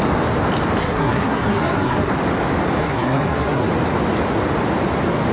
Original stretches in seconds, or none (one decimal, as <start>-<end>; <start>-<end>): 0.0-0.8; 2.1-2.8; 3.7-5.3

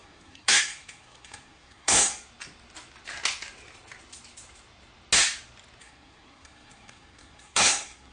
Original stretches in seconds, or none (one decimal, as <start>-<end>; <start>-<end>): 2.1-5.8

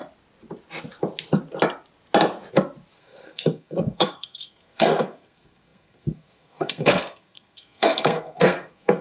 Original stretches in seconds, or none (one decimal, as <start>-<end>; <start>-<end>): 0.0-2.9

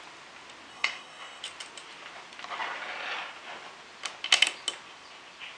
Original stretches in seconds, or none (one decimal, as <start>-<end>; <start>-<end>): 0.0-0.7; 1.4-5.6

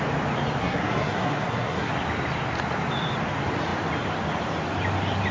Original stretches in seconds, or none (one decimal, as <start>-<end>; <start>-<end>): 0.0-0.6; 1.9-5.3

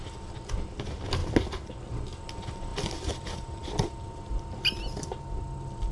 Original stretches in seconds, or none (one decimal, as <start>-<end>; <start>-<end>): 0.0-5.9

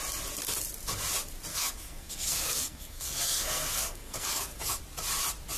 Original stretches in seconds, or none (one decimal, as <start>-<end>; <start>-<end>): 0.0-1.5; 4.8-5.6

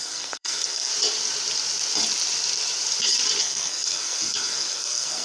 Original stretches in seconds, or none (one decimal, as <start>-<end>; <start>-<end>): 0.9-3.4